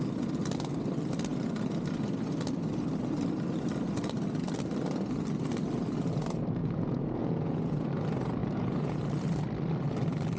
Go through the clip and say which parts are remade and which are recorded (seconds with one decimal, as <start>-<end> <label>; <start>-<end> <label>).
0.0-6.6 recorded; 6.6-7.9 remade; 7.9-8.4 recorded; 8.4-9.0 remade; 9.0-10.4 recorded